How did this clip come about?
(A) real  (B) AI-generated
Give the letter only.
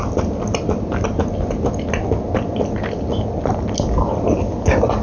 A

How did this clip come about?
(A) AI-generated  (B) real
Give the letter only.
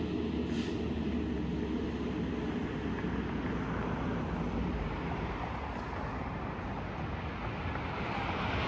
B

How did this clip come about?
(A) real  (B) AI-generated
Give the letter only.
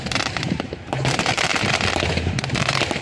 B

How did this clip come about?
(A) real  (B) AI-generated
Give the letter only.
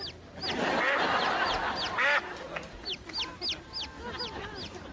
A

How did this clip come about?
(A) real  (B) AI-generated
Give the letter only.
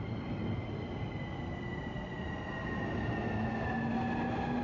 A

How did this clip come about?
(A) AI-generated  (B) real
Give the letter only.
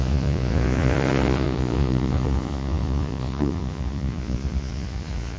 A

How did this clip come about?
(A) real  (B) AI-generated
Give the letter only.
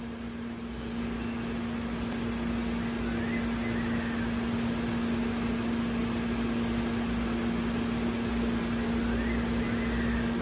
A